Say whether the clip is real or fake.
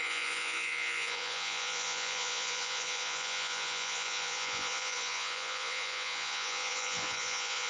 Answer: fake